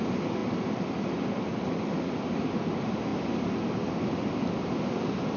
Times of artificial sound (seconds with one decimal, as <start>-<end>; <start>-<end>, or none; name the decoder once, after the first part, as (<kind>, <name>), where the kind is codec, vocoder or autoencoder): none